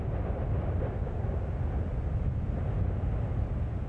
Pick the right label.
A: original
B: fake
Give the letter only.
A